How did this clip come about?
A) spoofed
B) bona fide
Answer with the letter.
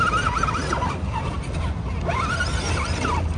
B